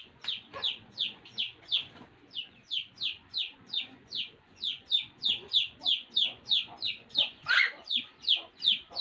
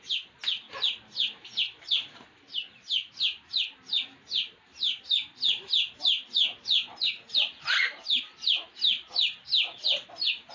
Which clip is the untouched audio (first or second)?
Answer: second